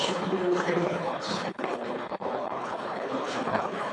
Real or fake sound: fake